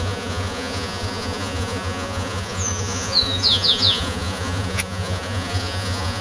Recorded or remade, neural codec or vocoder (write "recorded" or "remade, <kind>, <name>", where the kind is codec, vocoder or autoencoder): remade, vocoder, Vocos